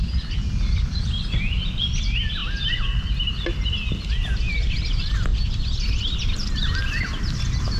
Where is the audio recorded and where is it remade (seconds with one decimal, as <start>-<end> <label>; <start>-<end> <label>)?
0.0-5.3 recorded; 5.3-6.3 remade; 6.3-7.8 recorded